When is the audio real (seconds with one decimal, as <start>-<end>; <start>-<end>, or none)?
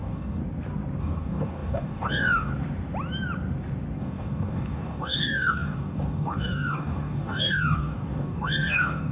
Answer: 0.4-1.0; 2.5-4.0